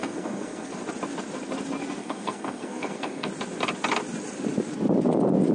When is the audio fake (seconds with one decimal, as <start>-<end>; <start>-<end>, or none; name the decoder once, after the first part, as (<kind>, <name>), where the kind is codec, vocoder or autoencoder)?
0.0-0.7 (codec, SNAC); 2.0-3.3